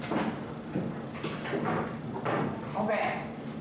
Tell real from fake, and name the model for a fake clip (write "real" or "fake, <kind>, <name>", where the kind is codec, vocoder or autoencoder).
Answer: real